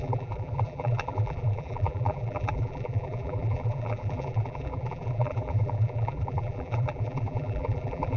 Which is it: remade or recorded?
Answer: remade